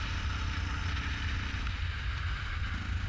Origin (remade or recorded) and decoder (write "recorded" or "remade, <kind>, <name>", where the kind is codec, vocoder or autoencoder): recorded